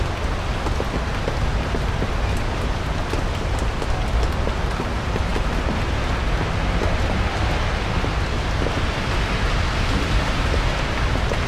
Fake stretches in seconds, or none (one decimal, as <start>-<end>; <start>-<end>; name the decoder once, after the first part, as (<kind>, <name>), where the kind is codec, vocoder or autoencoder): none